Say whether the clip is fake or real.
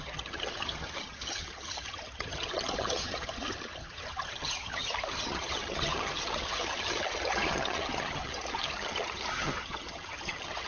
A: fake